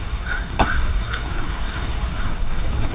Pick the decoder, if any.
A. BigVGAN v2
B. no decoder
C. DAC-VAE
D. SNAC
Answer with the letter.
D